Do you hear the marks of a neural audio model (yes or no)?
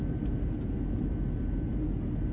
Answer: no